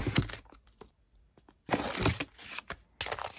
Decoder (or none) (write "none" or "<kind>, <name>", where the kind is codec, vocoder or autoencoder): none